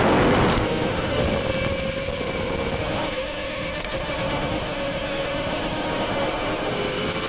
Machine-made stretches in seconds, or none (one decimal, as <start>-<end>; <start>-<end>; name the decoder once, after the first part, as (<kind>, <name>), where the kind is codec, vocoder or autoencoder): 0.5-1.2 (autoencoder, DAC-VAE); 2.8-6.7